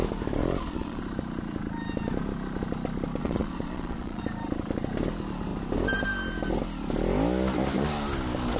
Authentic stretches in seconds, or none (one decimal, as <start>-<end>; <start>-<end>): 0.0-0.4; 1.0-3.2; 4.2-8.6